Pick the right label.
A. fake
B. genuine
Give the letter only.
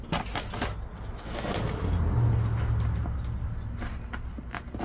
B